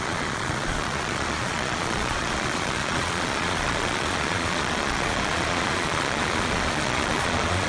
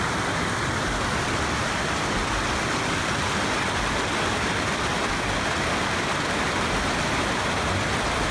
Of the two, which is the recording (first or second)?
second